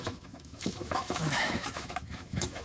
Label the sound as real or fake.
fake